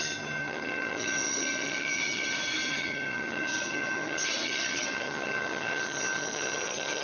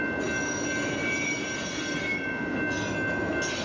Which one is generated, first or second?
first